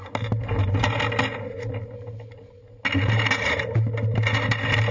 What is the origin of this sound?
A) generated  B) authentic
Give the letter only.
B